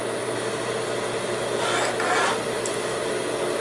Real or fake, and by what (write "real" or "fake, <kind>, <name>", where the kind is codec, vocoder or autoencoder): real